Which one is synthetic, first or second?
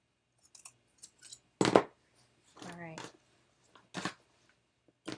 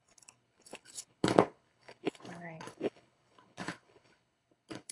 second